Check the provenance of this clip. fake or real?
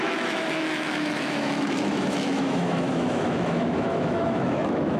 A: fake